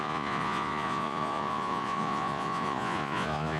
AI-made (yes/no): yes